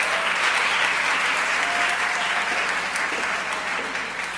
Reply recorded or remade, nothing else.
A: recorded